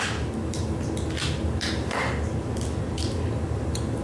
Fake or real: fake